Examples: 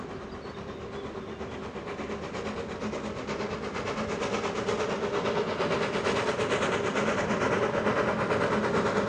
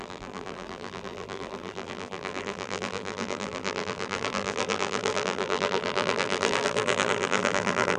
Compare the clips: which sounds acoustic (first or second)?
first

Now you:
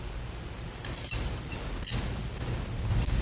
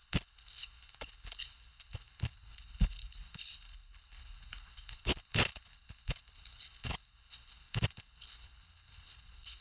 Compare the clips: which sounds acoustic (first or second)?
first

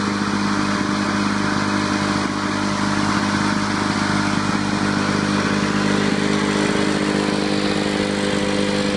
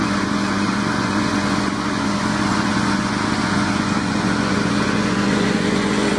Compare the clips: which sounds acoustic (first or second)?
first